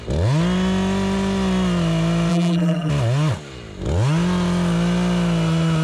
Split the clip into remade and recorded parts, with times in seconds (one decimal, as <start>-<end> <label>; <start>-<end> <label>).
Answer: 0.0-2.3 recorded; 2.3-2.9 remade; 2.9-5.8 recorded